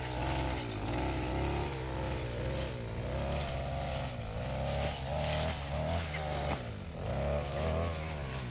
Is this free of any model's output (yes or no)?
yes